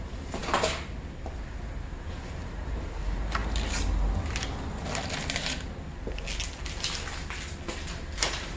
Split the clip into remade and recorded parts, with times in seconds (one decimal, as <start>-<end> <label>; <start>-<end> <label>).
0.0-0.4 remade; 0.4-1.6 recorded; 1.6-3.4 remade; 3.4-7.9 recorded; 7.9-8.6 remade